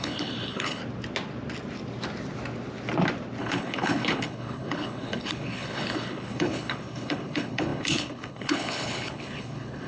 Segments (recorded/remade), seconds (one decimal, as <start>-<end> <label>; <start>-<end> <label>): 0.0-0.8 remade; 0.8-3.4 recorded; 3.4-9.9 remade